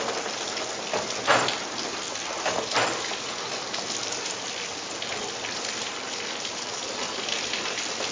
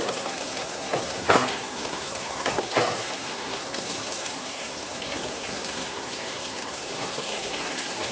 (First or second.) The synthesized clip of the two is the second